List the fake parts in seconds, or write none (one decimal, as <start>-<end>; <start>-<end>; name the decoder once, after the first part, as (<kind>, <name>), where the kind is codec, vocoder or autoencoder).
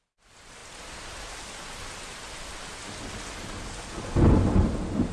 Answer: none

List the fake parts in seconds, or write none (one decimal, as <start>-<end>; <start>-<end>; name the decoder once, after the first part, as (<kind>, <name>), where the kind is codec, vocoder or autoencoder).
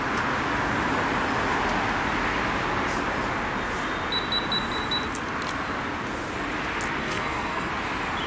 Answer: 7.0-7.7 (codec, SNAC)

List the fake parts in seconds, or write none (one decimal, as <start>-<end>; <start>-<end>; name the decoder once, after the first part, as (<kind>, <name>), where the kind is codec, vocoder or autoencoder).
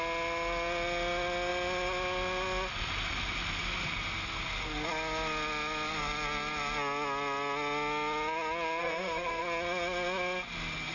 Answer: 8.8-9.4 (codec, SNAC)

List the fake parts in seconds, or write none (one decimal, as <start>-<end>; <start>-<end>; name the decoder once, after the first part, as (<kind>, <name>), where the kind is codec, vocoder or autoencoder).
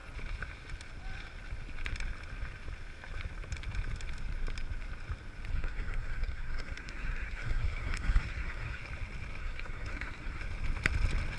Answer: 5.5-8.8 (codec, SNAC); 9.4-10.4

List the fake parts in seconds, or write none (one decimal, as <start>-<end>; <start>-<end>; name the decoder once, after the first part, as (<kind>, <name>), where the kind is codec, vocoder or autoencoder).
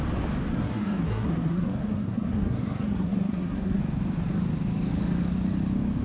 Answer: 0.5-3.8 (codec, SNAC)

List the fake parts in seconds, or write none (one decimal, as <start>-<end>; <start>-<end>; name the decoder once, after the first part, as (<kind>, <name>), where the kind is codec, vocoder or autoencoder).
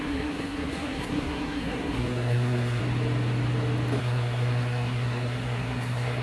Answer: 0.0-2.8 (codec, SNAC); 4.0-6.2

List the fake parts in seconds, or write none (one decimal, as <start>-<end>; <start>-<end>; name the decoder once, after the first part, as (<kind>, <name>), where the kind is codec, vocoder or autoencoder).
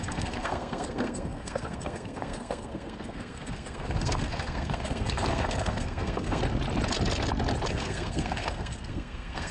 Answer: 0.0-6.4 (codec, SNAC); 7.7-9.5